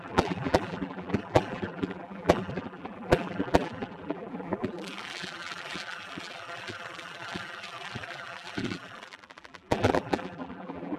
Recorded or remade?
remade